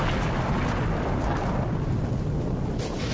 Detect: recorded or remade recorded